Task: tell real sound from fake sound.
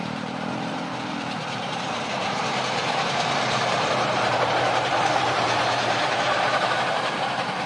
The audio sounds fake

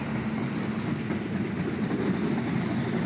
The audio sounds real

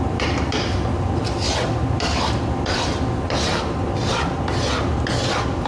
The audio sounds fake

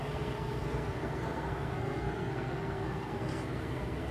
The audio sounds fake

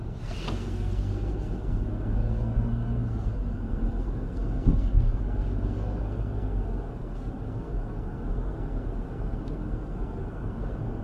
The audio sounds fake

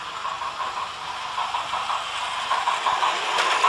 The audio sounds real